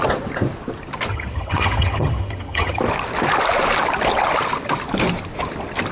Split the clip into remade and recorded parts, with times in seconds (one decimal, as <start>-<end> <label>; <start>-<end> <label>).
0.0-1.1 recorded; 1.1-2.8 remade; 2.8-5.9 recorded